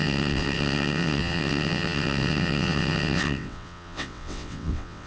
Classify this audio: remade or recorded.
remade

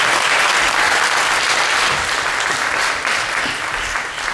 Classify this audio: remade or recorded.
recorded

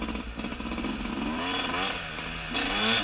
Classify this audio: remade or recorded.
recorded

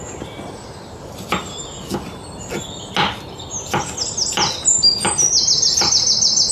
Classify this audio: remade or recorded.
recorded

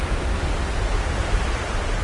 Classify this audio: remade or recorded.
remade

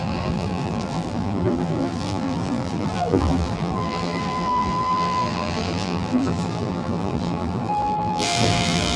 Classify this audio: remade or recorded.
remade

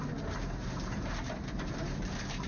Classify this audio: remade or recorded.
remade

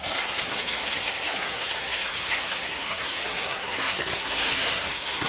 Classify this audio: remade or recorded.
remade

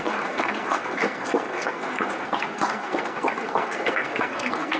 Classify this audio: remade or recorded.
remade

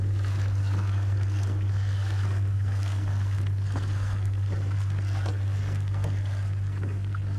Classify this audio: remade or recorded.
remade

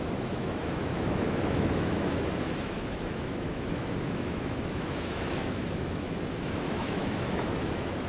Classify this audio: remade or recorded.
remade